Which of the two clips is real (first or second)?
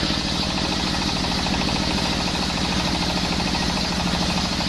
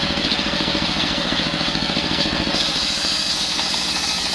first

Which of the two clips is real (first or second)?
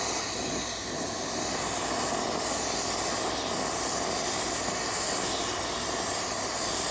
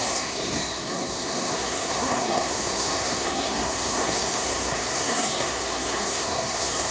first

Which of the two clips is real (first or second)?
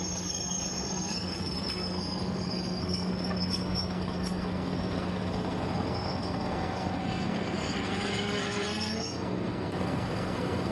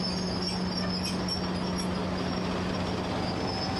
second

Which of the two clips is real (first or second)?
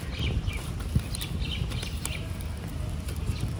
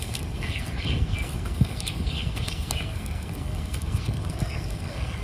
first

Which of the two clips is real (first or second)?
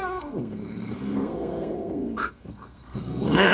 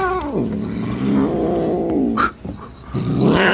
second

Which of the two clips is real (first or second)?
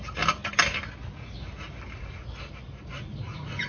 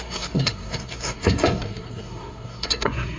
first